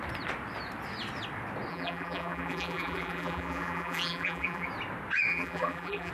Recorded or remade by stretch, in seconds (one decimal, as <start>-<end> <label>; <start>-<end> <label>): 0.0-1.7 recorded; 1.7-4.7 remade; 4.7-5.3 recorded; 5.3-6.1 remade